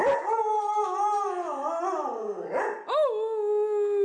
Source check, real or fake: real